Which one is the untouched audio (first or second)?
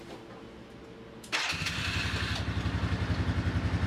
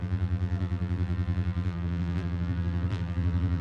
first